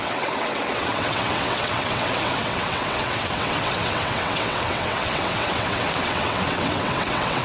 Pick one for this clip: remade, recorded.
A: remade